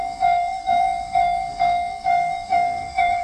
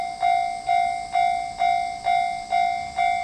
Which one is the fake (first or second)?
first